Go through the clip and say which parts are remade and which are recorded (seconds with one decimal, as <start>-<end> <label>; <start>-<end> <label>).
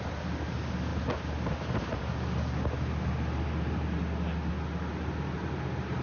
0.0-6.0 recorded